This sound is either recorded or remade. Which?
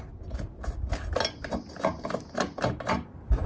recorded